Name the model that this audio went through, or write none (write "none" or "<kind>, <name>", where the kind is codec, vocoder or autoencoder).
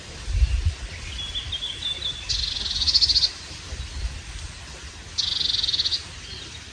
none